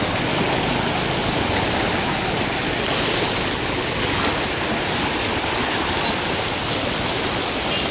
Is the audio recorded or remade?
recorded